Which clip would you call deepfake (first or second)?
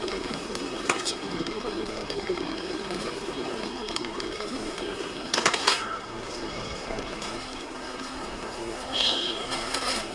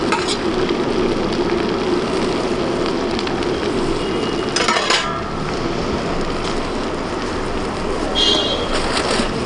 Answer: first